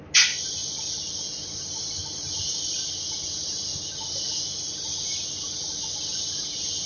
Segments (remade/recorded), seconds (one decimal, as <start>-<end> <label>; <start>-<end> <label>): 0.0-6.9 recorded